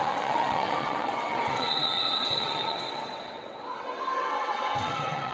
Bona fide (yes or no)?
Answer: no